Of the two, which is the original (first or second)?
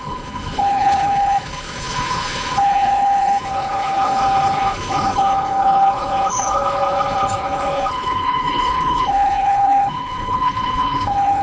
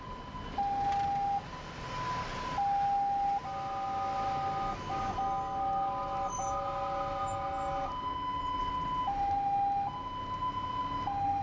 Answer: second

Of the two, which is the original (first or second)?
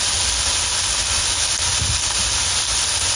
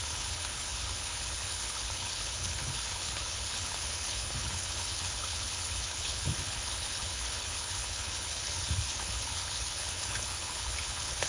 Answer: first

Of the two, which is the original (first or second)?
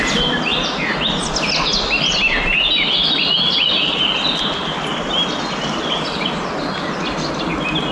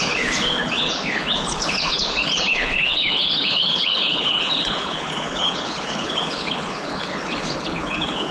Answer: first